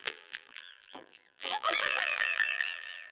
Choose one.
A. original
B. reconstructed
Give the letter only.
B